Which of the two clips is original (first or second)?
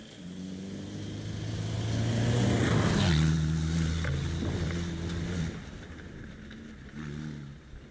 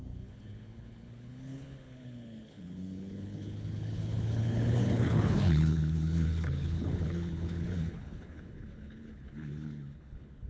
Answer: first